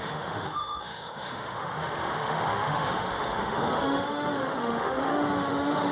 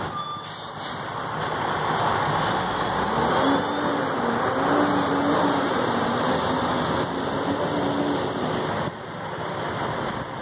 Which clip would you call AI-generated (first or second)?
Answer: first